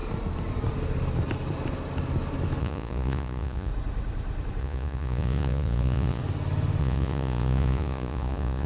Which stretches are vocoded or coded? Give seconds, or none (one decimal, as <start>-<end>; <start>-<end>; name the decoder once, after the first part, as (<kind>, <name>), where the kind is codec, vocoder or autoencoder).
2.6-3.7 (vocoder, Vocos); 4.6-6.2; 6.8-8.7